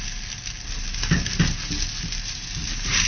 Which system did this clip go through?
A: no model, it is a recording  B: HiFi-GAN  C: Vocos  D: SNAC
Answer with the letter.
A